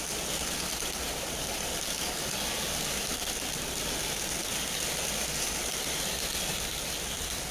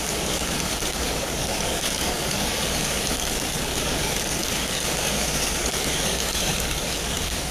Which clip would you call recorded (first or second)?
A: first